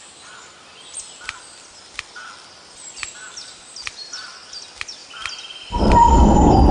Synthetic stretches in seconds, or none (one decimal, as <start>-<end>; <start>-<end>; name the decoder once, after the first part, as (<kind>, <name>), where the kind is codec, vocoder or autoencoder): none

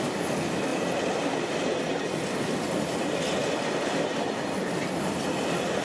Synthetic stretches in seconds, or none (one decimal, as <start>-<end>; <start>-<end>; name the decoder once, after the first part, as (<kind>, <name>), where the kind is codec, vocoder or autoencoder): none

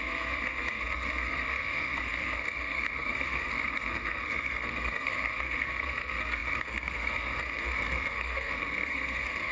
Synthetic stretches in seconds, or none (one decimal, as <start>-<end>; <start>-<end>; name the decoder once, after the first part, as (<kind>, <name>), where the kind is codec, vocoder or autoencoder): 0.0-9.5 (codec, SNAC)

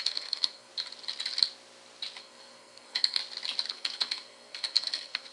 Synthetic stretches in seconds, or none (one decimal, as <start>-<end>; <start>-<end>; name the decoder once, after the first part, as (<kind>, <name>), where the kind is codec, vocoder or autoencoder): 0.0-0.7 (codec, SNAC); 2.2-3.2; 3.7-5.3

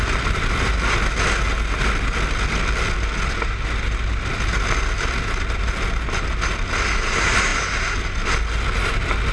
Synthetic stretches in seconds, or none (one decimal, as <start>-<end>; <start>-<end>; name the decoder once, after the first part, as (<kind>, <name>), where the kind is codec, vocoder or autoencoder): none

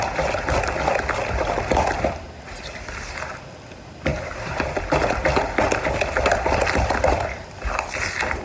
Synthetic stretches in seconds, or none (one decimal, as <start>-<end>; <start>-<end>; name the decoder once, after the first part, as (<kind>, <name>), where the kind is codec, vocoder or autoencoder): none

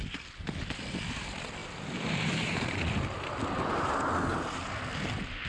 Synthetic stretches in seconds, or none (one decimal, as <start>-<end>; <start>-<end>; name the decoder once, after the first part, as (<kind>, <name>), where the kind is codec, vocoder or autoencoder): none